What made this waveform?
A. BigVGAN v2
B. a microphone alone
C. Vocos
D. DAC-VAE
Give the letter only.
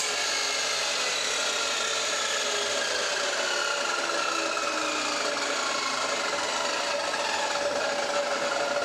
B